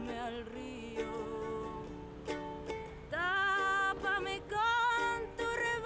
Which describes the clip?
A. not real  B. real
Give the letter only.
B